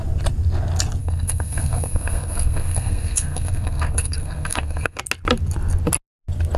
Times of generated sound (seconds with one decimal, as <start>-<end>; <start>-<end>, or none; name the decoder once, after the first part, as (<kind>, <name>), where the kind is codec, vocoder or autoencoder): 1.0-5.0 (codec, SNAC)